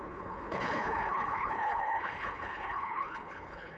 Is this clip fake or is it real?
fake